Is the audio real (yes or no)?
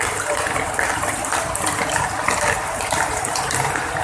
yes